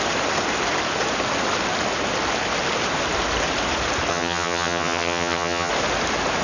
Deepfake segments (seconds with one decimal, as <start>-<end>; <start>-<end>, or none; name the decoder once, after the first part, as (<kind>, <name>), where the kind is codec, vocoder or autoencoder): 4.1-5.7 (vocoder, HiFi-GAN)